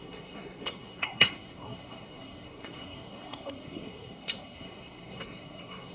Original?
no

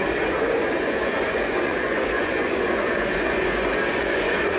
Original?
no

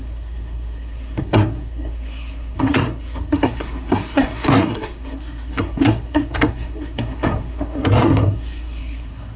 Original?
no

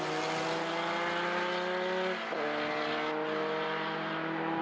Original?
yes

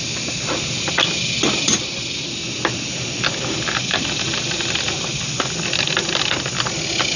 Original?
yes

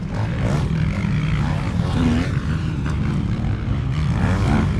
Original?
yes